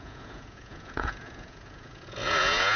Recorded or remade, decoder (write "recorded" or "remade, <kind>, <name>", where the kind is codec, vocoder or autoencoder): remade, vocoder, Vocos